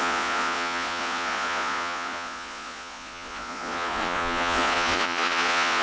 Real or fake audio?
fake